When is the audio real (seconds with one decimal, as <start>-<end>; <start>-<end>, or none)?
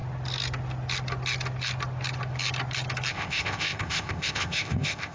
0.0-3.1